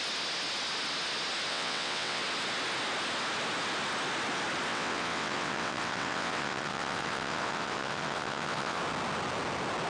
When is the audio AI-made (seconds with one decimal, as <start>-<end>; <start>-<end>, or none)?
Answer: 1.5-2.2; 4.7-8.8